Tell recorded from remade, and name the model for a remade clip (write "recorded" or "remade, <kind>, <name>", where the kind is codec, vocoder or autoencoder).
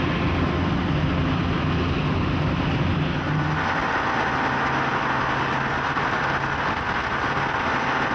recorded